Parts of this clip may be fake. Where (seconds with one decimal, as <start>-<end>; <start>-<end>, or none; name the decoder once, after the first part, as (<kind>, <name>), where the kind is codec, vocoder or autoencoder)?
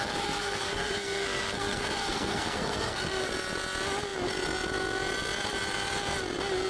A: 0.0-3.3 (codec, SNAC)